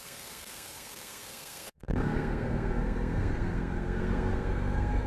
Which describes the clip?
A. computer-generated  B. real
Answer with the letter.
A